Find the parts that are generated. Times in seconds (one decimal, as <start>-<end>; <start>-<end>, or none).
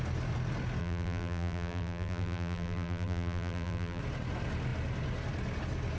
0.8-4.0